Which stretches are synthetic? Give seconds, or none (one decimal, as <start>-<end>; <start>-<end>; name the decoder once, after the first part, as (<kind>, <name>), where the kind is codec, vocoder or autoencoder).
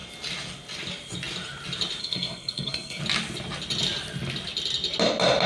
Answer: 2.0-3.0 (codec, SNAC)